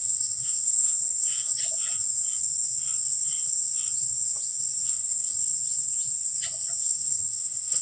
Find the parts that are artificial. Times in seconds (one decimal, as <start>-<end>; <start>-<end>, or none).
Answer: 0.0-1.6; 4.9-5.4; 6.8-7.8